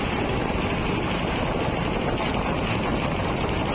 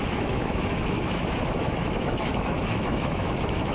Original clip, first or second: first